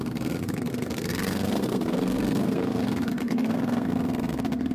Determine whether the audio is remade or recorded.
remade